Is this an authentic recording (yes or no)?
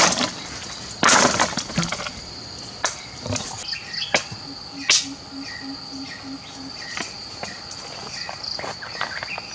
yes